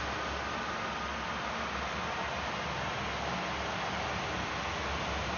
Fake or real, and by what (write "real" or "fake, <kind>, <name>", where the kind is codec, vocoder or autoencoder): real